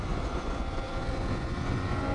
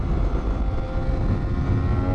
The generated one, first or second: first